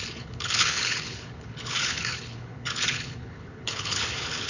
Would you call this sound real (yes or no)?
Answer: no